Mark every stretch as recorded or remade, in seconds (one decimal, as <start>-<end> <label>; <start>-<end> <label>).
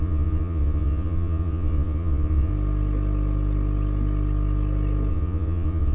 0.0-2.5 remade; 2.5-5.1 recorded; 5.1-5.9 remade